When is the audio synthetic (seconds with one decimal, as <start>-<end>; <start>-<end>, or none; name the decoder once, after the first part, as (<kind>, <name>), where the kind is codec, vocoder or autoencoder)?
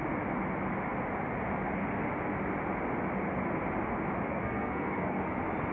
4.3-5.3 (codec, SNAC)